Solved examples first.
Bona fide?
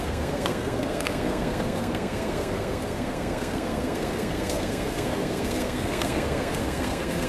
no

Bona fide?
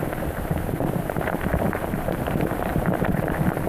no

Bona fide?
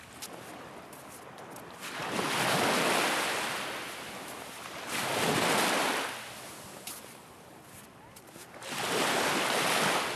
yes